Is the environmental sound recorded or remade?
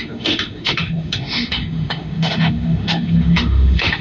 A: remade